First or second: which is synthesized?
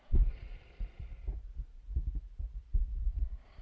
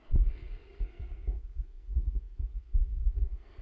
second